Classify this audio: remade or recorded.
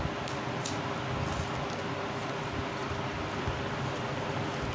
recorded